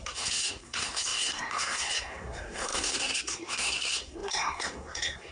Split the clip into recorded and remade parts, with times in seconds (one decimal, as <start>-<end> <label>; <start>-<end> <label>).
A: 0.0-5.3 remade